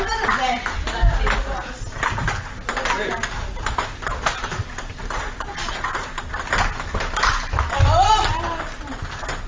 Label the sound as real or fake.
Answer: real